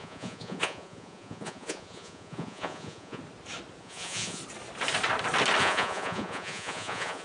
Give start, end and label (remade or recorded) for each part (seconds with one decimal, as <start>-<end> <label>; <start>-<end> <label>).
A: 0.0-3.2 remade; 3.2-3.8 recorded; 3.8-4.4 remade; 4.4-5.6 recorded; 5.6-7.2 remade